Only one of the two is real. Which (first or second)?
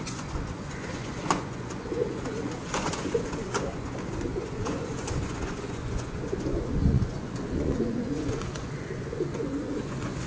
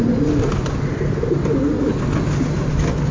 second